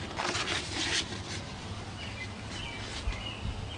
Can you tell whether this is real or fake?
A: real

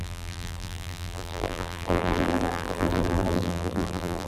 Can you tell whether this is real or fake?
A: fake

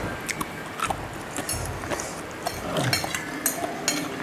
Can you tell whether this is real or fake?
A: real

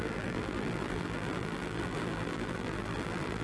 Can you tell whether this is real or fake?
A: fake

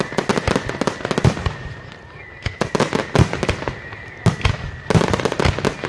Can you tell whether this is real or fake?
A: real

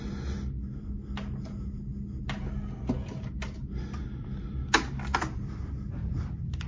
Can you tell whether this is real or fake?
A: real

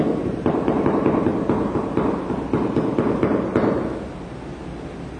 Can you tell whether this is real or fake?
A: real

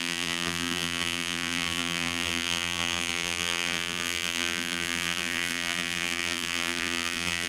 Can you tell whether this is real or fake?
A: fake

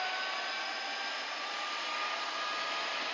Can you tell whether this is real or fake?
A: real